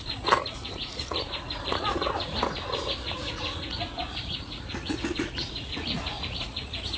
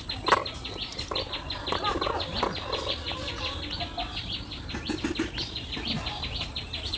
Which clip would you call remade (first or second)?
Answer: first